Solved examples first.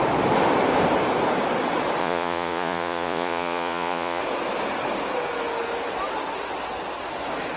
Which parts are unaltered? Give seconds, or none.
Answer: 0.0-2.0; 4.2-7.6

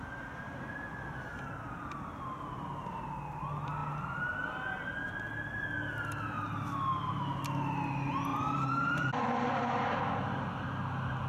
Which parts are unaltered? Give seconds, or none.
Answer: 0.0-8.3; 10.0-11.3

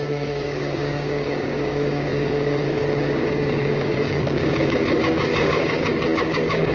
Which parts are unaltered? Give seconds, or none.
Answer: none

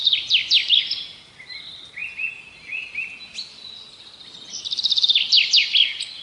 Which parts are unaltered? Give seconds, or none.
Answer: 0.0-6.2